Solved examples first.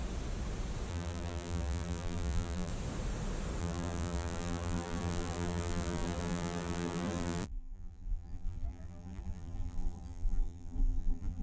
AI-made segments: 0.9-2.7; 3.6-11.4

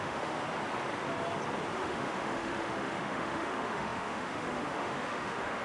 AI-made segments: 0.0-0.4; 1.8-5.6

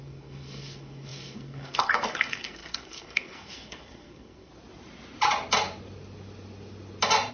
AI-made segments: 0.0-4.5

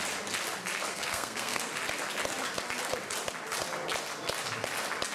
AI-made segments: 0.9-1.7

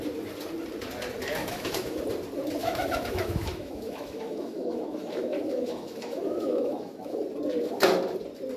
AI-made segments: 1.4-2.0; 2.6-7.2

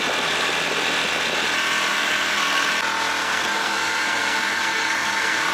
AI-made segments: 1.9-2.7; 3.2-5.5